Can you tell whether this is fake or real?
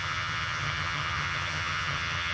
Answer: fake